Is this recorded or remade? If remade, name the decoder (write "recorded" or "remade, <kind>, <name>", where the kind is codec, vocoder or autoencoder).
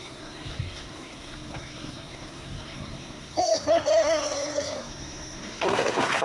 remade, codec, SNAC